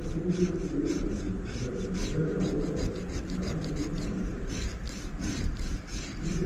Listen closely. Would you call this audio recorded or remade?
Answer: recorded